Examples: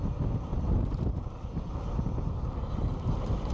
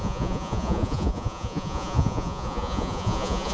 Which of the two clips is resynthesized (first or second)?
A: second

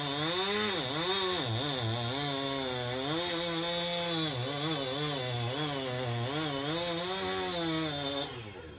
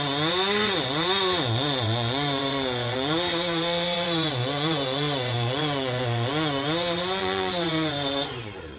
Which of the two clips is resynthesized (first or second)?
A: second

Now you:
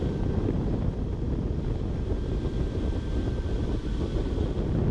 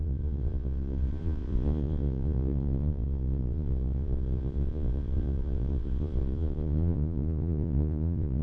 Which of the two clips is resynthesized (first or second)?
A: second